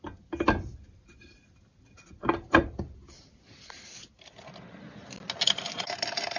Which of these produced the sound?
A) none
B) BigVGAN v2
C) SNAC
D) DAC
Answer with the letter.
A